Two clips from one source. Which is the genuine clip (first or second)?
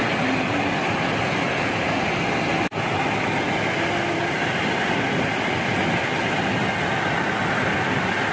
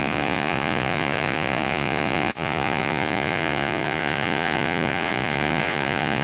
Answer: first